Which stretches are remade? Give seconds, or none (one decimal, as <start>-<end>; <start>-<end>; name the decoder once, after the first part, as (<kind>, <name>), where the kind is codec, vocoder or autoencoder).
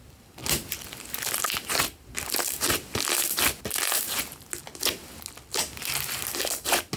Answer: none